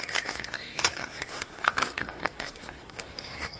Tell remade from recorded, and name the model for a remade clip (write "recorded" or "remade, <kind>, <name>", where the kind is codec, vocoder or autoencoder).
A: remade, codec, SNAC